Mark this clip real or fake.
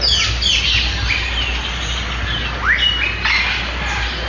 real